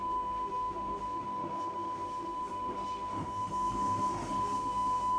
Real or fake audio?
fake